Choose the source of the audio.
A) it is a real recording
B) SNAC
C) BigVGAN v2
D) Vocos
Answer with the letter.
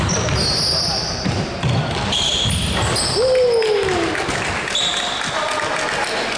A